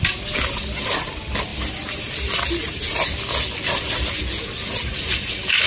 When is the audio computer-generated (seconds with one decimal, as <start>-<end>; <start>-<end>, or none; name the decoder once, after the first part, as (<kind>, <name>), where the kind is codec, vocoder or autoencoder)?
1.5-4.2 (vocoder, BigVGAN v2); 4.9-5.7